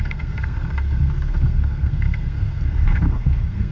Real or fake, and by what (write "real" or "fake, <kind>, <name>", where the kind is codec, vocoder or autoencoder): fake, codec, SNAC